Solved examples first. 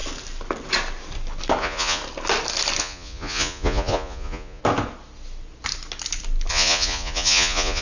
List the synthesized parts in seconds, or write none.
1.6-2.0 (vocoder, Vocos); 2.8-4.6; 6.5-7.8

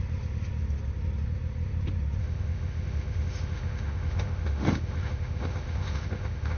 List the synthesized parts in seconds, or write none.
2.2-6.6 (autoencoder, DAC-VAE)

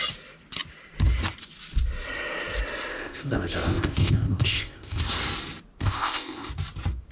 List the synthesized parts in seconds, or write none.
2.9-5.0 (codec, ZipCodec); 5.8-6.5

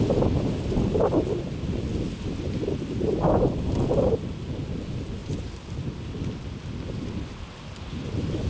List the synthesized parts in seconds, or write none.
none

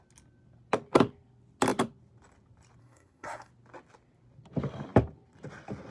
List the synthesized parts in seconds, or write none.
2.8-3.5 (codec, SNAC)